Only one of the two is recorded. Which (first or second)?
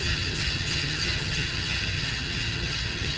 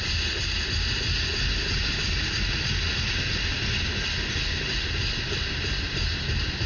second